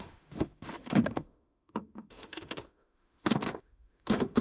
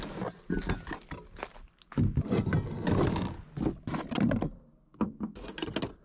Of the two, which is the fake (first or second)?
first